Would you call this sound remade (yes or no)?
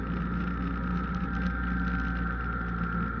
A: no